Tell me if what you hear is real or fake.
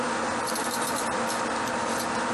real